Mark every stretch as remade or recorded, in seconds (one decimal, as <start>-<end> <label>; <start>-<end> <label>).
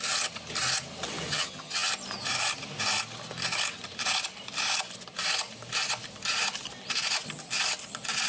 0.0-1.3 recorded; 1.3-1.9 remade; 1.9-8.3 recorded